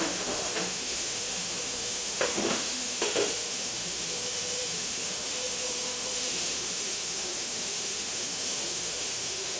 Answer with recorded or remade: remade